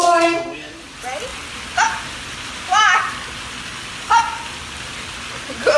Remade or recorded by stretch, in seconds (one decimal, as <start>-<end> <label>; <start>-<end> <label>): 0.0-5.8 recorded